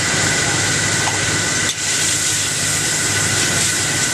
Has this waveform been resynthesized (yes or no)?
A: no